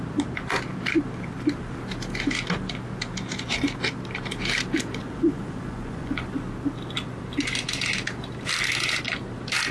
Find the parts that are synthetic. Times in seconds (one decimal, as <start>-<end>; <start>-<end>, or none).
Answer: 5.0-6.5